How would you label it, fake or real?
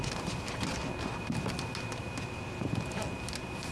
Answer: real